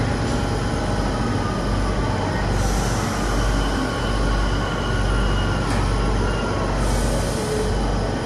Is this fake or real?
real